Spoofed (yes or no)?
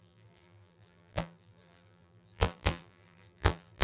yes